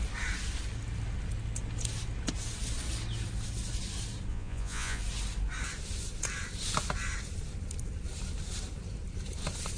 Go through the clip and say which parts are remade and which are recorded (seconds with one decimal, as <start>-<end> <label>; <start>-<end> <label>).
0.0-4.3 recorded; 4.3-5.0 remade; 5.0-9.8 recorded